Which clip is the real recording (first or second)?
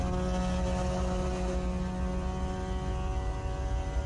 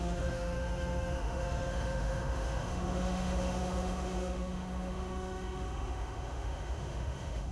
first